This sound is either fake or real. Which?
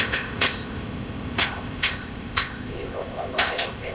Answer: fake